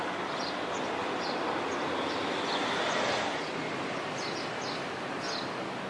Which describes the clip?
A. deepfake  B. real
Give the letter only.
B